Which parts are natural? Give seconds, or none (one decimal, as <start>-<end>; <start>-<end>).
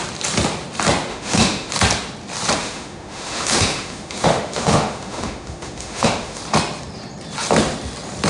0.0-1.1; 1.7-2.6; 6.4-8.3